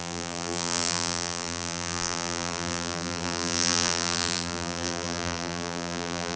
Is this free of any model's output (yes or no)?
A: no